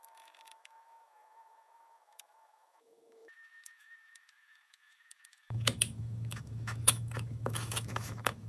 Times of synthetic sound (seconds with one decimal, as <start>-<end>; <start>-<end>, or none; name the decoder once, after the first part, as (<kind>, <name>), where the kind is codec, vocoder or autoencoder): 0.0-8.5 (autoencoder, DAC-VAE)